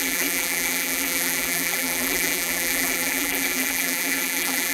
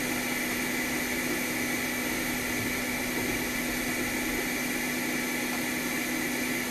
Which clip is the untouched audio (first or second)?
second